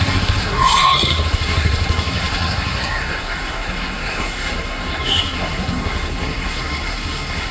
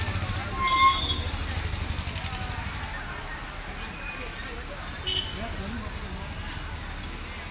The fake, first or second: first